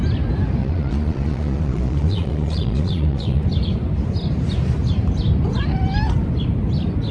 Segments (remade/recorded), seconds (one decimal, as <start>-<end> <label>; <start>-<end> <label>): 0.0-0.6 recorded; 0.6-3.4 remade; 3.4-7.1 recorded